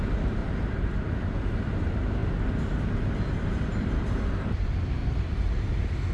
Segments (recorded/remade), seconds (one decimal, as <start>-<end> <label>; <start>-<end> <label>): 0.0-0.4 recorded; 0.4-1.3 remade; 1.3-5.0 recorded; 5.0-6.1 remade